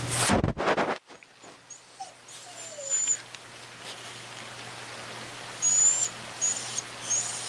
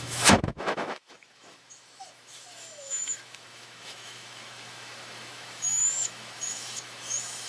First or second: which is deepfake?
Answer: second